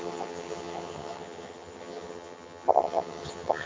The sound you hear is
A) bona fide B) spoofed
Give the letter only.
B